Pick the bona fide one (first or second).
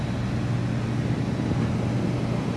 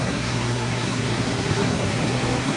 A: first